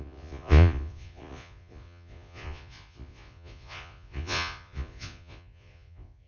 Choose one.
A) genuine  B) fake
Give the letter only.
B